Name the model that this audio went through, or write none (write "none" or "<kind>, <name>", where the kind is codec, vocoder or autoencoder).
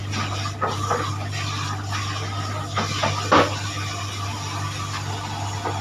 none